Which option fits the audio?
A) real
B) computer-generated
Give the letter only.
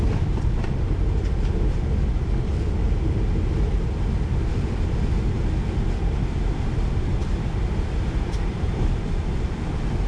B